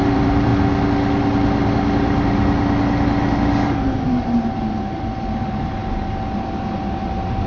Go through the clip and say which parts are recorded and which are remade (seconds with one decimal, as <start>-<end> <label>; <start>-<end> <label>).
0.0-0.5 remade; 0.5-5.0 recorded; 5.0-5.8 remade; 5.8-7.5 recorded